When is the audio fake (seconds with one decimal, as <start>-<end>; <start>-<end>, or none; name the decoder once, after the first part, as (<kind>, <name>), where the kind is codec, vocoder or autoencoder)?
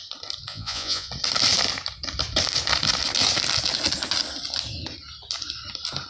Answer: 0.5-1.1 (vocoder, Vocos)